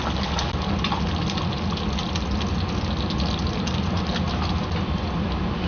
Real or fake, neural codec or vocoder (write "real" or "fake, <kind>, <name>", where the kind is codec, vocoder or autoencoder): real